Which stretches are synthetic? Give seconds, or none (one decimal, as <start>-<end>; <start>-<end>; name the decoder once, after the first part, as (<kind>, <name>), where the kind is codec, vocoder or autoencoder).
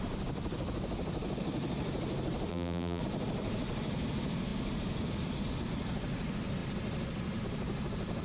2.5-3.0 (vocoder, BigVGAN v2)